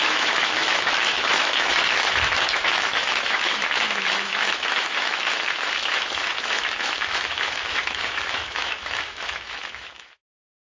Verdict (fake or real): fake